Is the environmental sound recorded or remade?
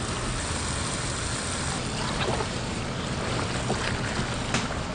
recorded